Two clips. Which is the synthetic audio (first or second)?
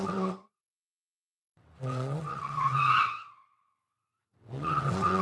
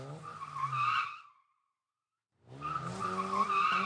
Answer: first